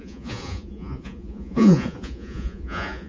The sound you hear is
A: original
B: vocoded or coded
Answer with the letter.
B